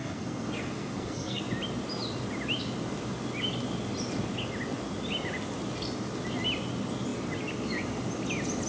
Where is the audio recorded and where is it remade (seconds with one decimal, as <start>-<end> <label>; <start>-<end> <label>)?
0.0-1.4 remade; 1.4-8.7 recorded